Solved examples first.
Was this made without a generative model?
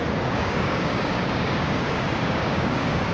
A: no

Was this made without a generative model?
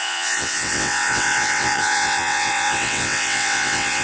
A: no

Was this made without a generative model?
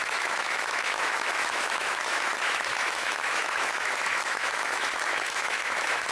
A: no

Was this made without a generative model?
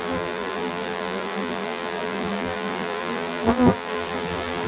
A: no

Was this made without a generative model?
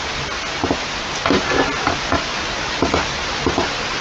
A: yes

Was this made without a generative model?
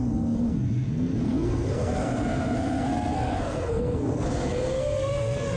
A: no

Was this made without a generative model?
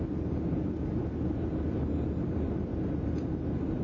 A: yes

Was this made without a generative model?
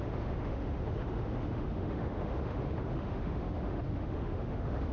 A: no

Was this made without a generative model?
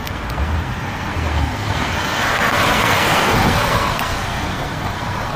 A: no